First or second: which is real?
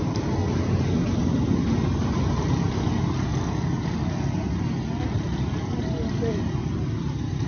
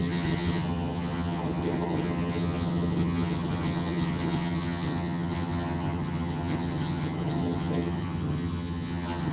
first